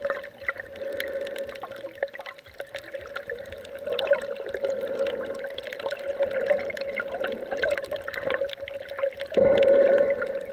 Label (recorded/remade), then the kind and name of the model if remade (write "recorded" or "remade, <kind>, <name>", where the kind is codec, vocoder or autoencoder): recorded